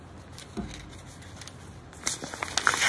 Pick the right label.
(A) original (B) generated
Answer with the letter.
A